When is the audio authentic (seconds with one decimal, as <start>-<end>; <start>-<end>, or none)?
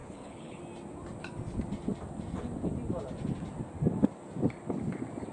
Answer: 0.6-5.3